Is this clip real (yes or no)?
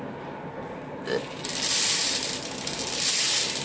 yes